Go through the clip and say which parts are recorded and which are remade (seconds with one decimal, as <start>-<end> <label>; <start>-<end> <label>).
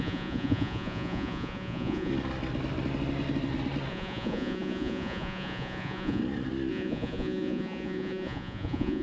0.0-2.1 remade; 2.1-3.9 recorded; 3.9-6.2 remade; 6.2-6.7 recorded; 6.7-9.0 remade